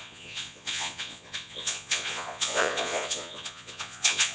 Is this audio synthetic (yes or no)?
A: yes